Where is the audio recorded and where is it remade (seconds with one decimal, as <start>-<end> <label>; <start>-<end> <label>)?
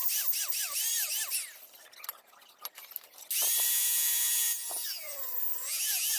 0.0-3.7 recorded; 3.7-6.2 remade